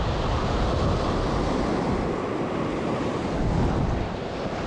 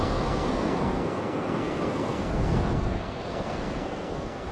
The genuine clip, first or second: first